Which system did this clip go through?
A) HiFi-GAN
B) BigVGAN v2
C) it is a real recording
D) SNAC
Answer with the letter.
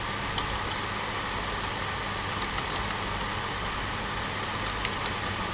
C